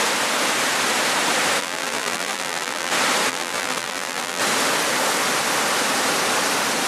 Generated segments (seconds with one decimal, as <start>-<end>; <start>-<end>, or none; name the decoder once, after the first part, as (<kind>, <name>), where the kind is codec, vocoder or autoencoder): 1.6-2.9 (vocoder, BigVGAN v2); 3.3-4.4